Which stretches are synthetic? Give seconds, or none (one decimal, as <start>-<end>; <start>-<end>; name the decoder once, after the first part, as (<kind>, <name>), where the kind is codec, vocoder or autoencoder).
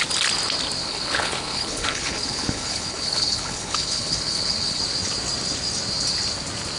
0.8-4.8 (codec, HILCodec)